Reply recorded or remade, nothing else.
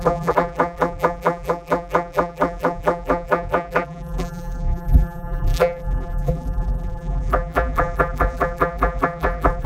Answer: remade